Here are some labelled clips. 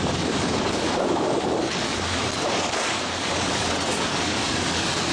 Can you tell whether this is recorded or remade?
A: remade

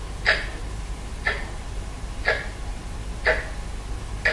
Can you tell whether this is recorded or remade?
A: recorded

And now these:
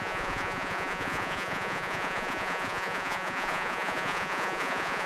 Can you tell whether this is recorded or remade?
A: remade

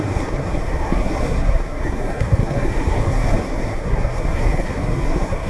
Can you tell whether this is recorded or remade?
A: remade